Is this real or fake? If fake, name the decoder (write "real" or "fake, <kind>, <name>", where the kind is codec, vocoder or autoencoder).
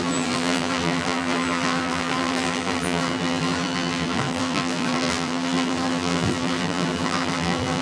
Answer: fake, vocoder, BigVGAN v2